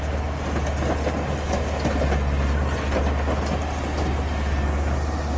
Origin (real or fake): real